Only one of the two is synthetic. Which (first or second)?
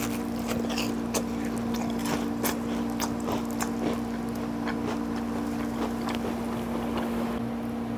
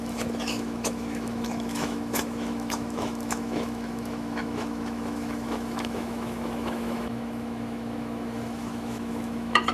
second